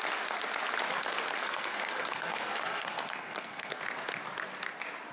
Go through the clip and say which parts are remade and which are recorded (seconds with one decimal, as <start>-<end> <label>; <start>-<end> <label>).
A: 0.0-1.4 recorded; 1.4-3.8 remade; 3.8-5.1 recorded